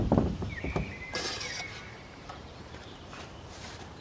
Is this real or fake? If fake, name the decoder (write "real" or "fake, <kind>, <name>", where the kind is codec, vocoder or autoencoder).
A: fake, vocoder, BigVGAN v2